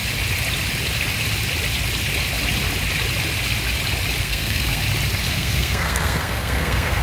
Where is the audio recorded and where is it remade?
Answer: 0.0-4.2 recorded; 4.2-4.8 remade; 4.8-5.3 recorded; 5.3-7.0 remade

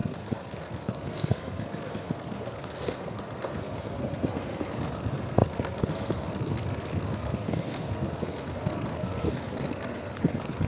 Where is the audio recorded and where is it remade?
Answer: 0.0-10.7 remade

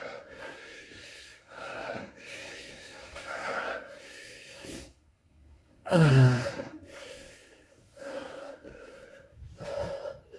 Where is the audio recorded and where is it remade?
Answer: 0.0-9.4 remade; 9.4-10.4 recorded

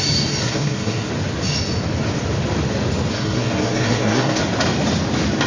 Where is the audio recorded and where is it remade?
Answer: 0.0-0.4 recorded; 0.4-1.1 remade; 1.1-3.1 recorded; 3.1-4.4 remade; 4.4-5.5 recorded

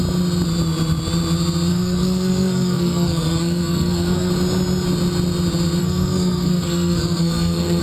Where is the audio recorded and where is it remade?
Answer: 0.0-1.7 recorded; 1.7-4.3 remade; 4.3-5.8 recorded; 5.8-7.8 remade

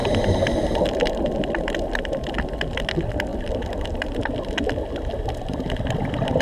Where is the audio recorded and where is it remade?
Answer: 0.0-6.4 recorded

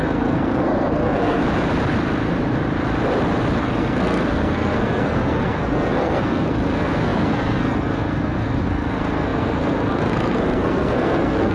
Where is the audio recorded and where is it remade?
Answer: 0.0-1.4 remade; 1.4-3.6 recorded; 3.6-11.5 remade